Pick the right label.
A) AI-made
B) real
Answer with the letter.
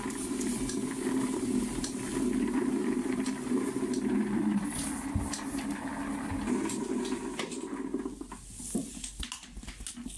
B